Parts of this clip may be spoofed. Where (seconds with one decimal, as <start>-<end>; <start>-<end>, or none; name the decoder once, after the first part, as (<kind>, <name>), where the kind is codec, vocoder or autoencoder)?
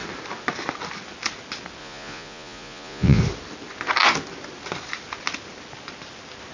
1.8-3.2 (vocoder, Vocos)